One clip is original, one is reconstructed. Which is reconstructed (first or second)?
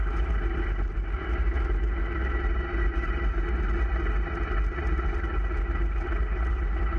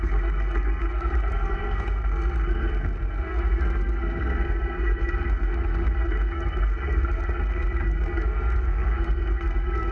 second